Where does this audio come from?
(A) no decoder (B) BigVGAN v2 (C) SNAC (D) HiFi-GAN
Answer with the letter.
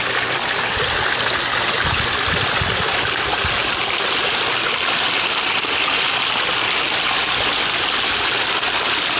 A